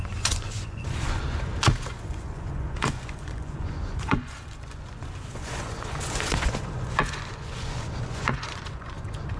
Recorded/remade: remade